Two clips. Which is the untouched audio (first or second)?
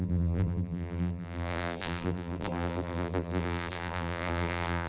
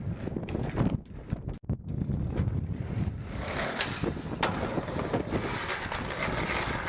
second